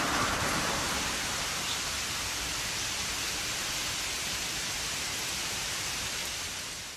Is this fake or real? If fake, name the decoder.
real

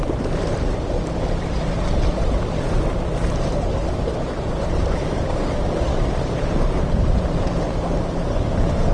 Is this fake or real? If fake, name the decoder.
fake, vocoder, BigVGAN v2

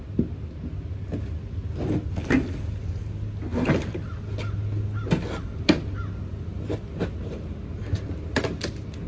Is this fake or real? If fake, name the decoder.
real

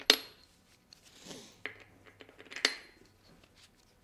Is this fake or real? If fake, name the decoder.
real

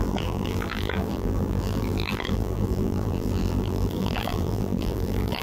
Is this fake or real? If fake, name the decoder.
fake, vocoder, BigVGAN v2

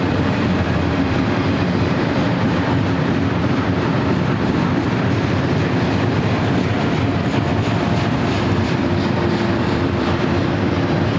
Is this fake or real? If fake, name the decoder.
fake, vocoder, BigVGAN v2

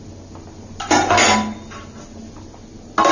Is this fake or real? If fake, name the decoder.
real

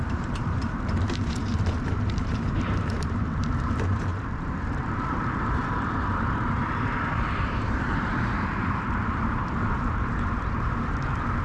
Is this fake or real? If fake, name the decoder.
fake, vocoder, BigVGAN v2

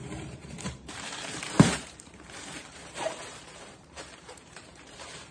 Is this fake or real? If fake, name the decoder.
fake, vocoder, BigVGAN v2